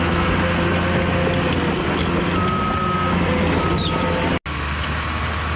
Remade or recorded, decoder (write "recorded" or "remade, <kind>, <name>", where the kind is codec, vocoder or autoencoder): recorded